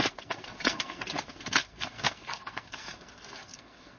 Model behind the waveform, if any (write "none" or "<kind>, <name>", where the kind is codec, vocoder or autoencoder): codec, SNAC